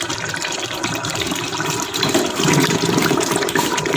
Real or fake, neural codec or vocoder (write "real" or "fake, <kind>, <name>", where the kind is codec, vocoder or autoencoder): fake, vocoder, BigVGAN v2